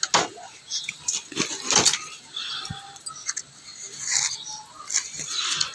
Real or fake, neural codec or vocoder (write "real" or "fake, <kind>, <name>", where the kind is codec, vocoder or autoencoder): real